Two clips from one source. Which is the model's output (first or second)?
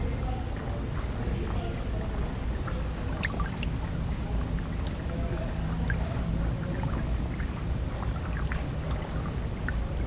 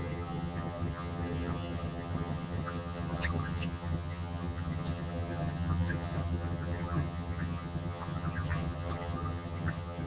second